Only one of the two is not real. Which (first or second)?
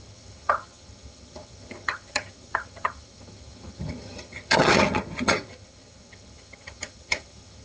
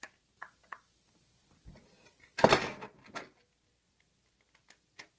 first